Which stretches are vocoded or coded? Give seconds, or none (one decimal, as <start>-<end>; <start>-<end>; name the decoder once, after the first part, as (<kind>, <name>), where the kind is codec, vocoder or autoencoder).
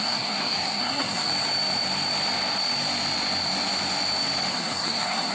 0.0-1.3 (codec, SNAC); 4.5-5.3